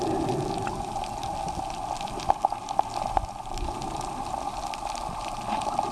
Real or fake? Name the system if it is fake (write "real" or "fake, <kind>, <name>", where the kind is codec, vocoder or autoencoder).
real